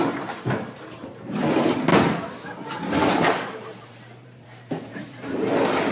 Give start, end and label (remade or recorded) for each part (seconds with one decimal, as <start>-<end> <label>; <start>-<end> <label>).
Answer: 0.0-5.9 remade